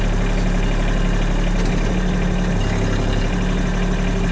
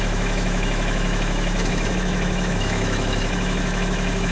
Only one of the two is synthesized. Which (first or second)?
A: second